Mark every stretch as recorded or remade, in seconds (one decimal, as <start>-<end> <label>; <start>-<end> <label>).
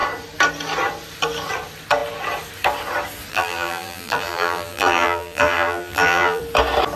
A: 0.0-3.3 recorded; 3.3-6.4 remade; 6.4-7.0 recorded